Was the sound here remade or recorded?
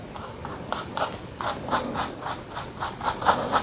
recorded